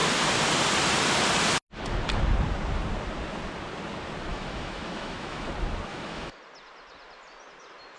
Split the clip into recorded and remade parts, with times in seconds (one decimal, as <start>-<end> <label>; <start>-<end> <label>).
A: 0.0-4.3 recorded; 4.3-5.5 remade; 5.5-5.9 recorded; 5.9-6.4 remade; 6.4-8.0 recorded